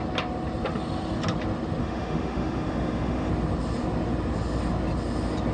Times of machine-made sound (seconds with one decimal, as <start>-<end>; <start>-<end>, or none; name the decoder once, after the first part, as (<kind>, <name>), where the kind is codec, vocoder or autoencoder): 1.8-3.3 (autoencoder, DAC-VAE)

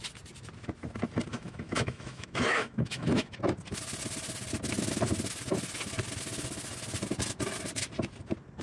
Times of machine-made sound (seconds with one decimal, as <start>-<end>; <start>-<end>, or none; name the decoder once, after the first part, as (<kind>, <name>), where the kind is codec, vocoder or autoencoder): 1.3-3.3 (autoencoder, DAC-VAE)

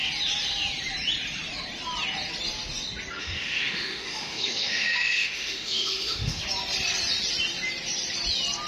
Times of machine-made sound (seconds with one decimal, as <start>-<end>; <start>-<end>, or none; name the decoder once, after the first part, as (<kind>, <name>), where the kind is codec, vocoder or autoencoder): 3.2-6.4 (autoencoder, DAC-VAE)

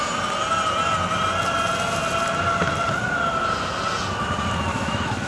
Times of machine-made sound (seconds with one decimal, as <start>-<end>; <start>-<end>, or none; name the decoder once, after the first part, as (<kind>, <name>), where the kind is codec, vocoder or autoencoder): 4.7-5.3 (autoencoder, DAC-VAE)